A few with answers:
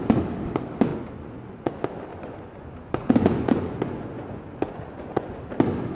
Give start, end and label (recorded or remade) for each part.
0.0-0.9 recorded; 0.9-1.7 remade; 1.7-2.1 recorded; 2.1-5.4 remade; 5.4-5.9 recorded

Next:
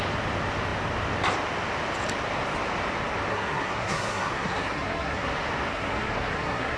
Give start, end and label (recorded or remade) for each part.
0.0-3.3 recorded; 3.3-5.3 remade; 5.3-5.7 recorded; 5.7-6.8 remade

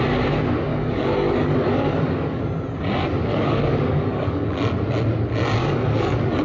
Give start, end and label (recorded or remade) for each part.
0.0-0.7 recorded; 0.7-2.4 remade; 2.4-3.3 recorded; 3.3-4.5 remade; 4.5-5.6 recorded; 5.6-6.4 remade

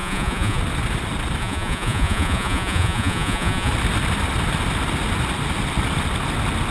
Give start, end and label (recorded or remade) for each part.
0.0-0.6 remade; 0.6-1.4 recorded; 1.4-3.7 remade; 3.7-6.7 recorded

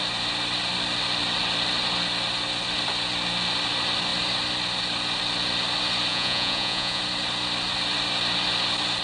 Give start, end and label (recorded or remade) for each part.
0.0-6.1 recorded; 6.1-7.0 remade; 7.0-9.0 recorded

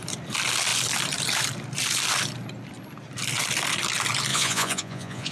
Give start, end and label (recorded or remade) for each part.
0.0-4.3 recorded; 4.3-5.3 remade

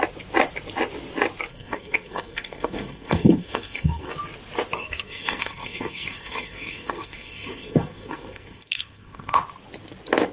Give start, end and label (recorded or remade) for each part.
0.0-1.5 recorded; 1.5-4.1 remade; 4.1-4.8 recorded; 4.8-9.4 remade; 9.4-10.3 recorded